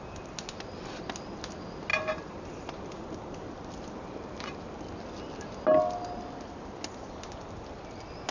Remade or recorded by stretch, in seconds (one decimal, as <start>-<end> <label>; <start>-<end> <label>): 0.0-1.9 recorded; 1.9-4.9 remade; 4.9-8.3 recorded